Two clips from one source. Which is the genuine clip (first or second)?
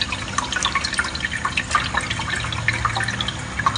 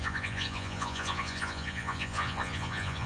first